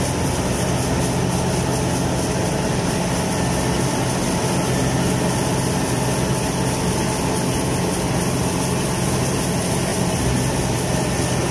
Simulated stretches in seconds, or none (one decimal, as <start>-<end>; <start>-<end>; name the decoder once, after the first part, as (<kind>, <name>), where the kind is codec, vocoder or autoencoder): none